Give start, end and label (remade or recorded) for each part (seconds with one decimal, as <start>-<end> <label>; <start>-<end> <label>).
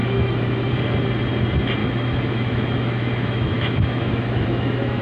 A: 0.0-0.7 remade; 0.7-1.8 recorded; 1.8-5.0 remade